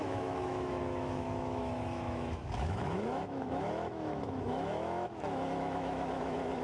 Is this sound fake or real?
fake